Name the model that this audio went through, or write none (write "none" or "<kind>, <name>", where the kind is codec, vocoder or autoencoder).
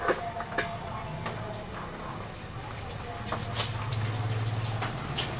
none